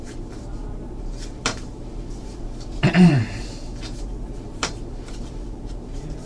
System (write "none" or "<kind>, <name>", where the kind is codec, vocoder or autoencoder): vocoder, BigVGAN v2